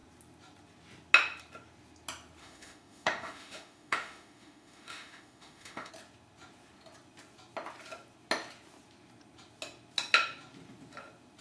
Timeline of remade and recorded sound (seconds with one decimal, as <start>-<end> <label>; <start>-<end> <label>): 0.0-2.4 recorded; 2.4-5.9 remade; 5.9-11.4 recorded

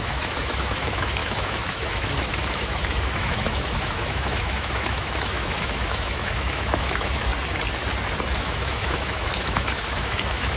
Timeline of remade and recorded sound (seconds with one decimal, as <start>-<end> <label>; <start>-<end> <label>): 0.0-7.3 remade; 7.3-8.3 recorded; 8.3-10.6 remade

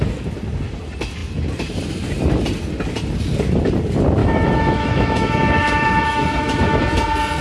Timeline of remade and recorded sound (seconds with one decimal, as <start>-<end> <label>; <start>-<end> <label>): 0.0-4.2 recorded; 4.2-6.8 remade; 6.8-7.4 recorded

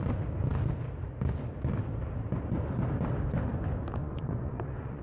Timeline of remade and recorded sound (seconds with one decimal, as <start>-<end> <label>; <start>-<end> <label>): 0.0-4.0 recorded; 4.0-5.0 remade

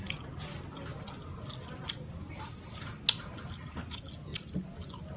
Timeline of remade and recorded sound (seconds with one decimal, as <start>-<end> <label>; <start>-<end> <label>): 0.0-5.2 recorded

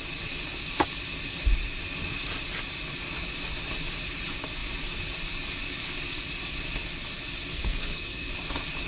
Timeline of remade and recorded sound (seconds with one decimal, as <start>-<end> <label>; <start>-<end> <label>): 0.0-7.5 recorded; 7.5-8.3 remade; 8.3-8.9 recorded

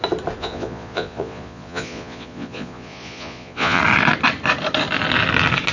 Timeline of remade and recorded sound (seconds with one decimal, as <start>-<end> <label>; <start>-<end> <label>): 0.0-0.4 recorded; 0.4-3.8 remade; 3.8-5.7 recorded